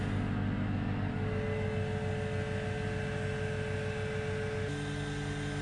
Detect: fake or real real